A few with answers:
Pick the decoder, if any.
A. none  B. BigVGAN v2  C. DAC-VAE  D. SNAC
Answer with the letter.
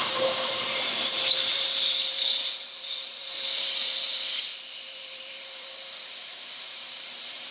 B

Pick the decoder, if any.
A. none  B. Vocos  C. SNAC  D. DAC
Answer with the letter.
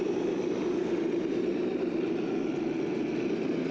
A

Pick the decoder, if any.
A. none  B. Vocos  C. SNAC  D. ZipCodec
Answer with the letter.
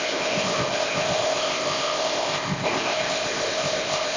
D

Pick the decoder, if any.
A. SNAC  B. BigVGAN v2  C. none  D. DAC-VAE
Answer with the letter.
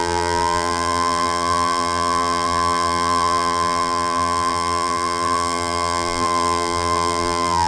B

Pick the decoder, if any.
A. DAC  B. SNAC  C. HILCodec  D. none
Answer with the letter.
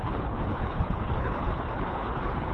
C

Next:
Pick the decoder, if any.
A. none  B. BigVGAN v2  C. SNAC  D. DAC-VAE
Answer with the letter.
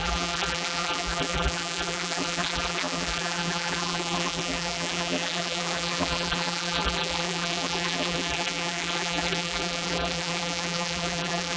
B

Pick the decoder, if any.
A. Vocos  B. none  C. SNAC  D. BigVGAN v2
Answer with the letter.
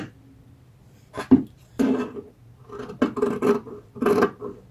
B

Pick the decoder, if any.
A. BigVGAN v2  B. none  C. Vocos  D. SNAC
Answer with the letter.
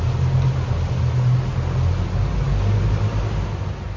B